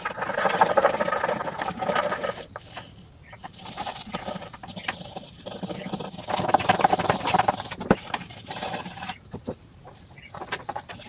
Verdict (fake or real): fake